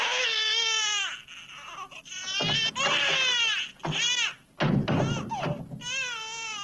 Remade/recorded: recorded